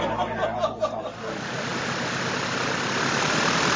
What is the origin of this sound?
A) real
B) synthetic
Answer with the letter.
A